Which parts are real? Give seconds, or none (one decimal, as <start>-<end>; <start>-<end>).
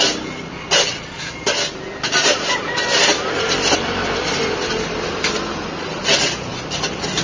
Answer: 0.0-2.2; 5.4-6.5